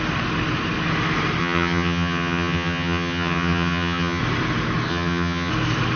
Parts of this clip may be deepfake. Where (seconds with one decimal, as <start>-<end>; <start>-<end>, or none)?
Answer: 1.4-4.2; 4.9-5.5